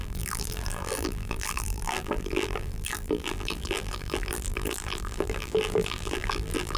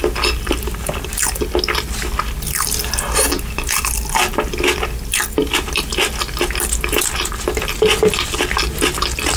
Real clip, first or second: second